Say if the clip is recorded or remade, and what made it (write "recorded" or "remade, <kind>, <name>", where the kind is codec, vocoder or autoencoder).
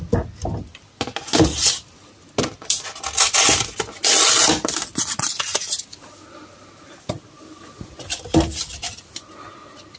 recorded